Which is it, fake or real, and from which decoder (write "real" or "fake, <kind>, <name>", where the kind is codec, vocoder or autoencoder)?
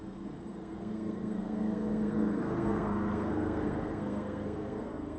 fake, codec, SNAC